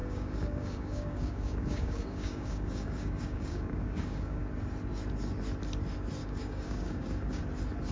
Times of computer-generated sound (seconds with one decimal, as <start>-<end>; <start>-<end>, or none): 0.0-4.4; 6.2-7.4